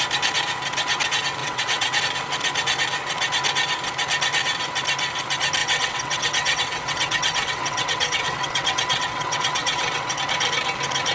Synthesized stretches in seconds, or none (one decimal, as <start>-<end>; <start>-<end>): 1.4-2.0; 5.6-10.2